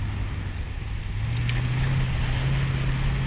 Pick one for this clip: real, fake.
real